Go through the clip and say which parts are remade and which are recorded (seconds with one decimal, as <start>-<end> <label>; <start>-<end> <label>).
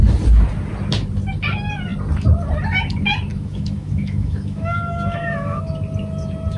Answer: 0.0-3.3 recorded; 3.3-5.6 remade; 5.6-6.6 recorded